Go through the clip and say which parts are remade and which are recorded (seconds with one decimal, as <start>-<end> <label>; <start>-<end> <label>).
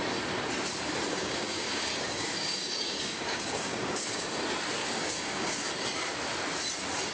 0.0-1.1 recorded; 1.1-4.3 remade; 4.3-4.8 recorded; 4.8-5.7 remade; 5.7-7.1 recorded